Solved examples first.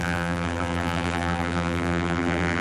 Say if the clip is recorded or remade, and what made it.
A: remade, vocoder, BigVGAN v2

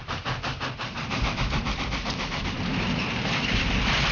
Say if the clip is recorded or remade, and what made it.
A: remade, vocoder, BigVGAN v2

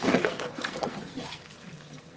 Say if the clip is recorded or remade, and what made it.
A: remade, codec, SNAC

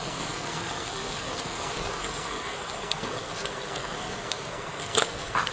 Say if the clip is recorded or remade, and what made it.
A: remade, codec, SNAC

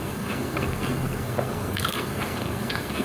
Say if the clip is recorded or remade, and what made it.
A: remade, codec, SNAC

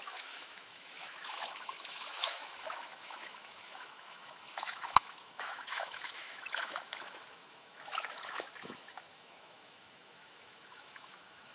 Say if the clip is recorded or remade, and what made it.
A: remade, autoencoder, DAC-VAE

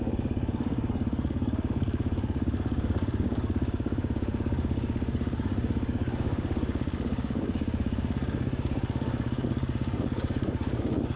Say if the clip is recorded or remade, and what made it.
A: remade, codec, DAC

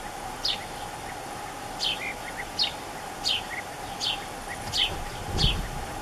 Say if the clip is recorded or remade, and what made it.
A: recorded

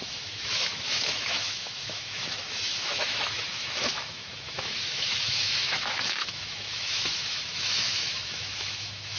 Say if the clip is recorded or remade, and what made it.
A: remade, autoencoder, DAC-VAE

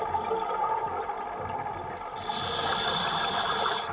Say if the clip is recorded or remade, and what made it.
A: recorded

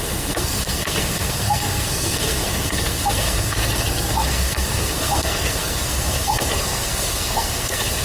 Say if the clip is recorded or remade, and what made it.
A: remade, codec, SNAC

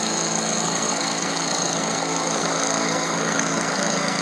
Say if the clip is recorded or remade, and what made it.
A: remade, codec, SNAC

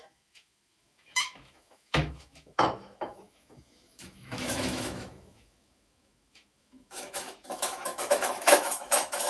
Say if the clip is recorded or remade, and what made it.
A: remade, autoencoder, DAC-VAE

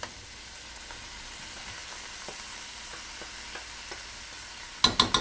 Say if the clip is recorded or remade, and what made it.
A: recorded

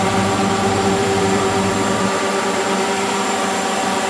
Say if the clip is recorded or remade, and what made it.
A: remade, vocoder, BigVGAN v2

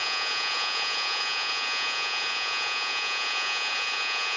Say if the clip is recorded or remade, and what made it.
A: remade, vocoder, Vocos